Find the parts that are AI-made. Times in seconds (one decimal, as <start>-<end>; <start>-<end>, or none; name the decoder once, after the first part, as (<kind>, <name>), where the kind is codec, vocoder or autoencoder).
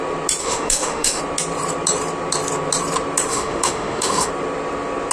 0.4-1.2 (autoencoder, DAC-VAE); 3.3-4.3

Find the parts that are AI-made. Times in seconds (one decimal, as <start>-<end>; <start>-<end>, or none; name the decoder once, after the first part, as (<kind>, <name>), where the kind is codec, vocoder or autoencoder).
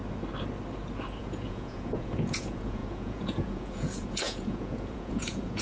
1.2-5.6 (vocoder, Vocos)